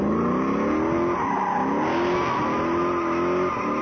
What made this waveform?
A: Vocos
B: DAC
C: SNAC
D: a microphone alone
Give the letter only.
D